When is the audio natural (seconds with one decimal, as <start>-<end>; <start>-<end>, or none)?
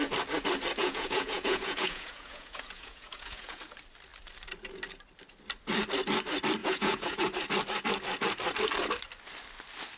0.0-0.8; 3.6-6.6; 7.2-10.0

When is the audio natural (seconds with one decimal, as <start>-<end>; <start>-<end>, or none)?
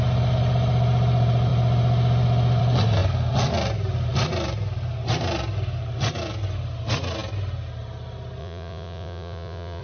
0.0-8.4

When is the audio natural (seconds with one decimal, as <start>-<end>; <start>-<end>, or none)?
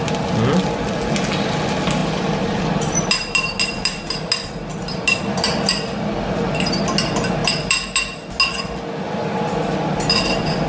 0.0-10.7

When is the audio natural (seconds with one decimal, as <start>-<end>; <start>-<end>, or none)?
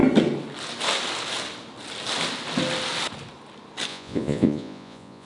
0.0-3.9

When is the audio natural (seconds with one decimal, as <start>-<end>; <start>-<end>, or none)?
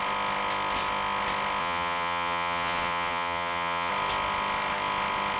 0.0-1.6; 3.9-5.4